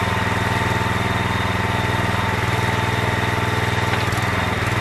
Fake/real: real